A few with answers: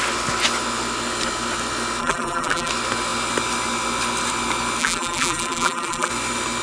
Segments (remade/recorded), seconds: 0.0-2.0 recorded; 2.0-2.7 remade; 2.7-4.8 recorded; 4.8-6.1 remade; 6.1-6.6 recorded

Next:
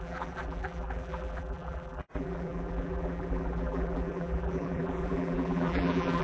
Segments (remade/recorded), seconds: 0.0-6.2 remade

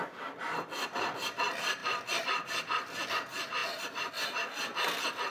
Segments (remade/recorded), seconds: 0.0-1.8 recorded; 1.8-3.1 remade; 3.1-3.6 recorded; 3.6-4.1 remade; 4.1-5.3 recorded

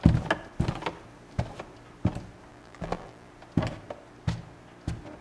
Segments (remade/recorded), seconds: 0.0-2.5 recorded; 2.5-3.3 remade; 3.3-5.2 recorded

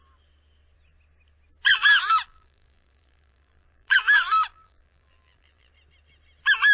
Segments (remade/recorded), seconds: 0.0-1.7 recorded; 1.7-5.7 remade; 5.7-6.7 recorded

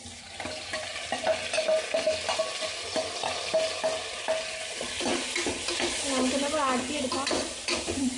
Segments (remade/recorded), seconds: 0.0-0.9 remade; 0.9-4.6 recorded; 4.6-5.1 remade; 5.1-6.3 recorded; 6.3-8.2 remade

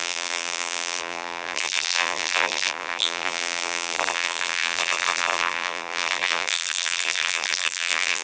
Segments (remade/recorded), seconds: 0.0-8.2 remade